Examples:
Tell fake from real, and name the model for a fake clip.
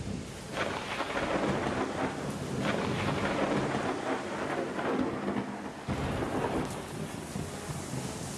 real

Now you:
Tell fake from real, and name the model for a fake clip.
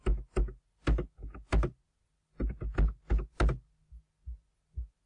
real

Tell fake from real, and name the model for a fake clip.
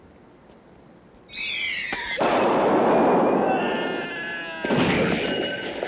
real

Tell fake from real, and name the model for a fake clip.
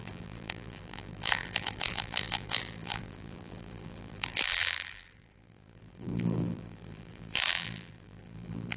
fake, vocoder, BigVGAN v2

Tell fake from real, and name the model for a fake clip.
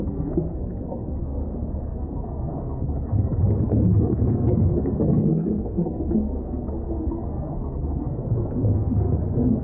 fake, codec, SNAC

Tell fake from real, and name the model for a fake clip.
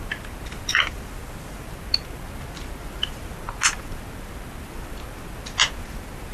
real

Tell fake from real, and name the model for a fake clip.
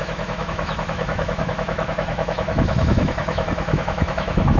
fake, autoencoder, DAC-VAE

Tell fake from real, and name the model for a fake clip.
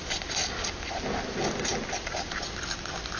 real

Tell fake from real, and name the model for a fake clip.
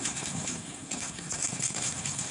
fake, codec, SNAC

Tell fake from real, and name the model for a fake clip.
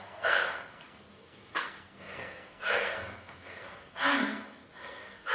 fake, codec, SNAC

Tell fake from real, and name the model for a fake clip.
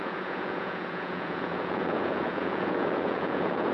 fake, vocoder, Vocos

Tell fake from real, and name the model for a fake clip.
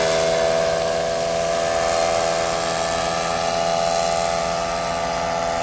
real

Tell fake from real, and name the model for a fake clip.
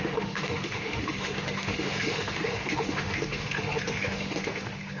fake, autoencoder, DAC-VAE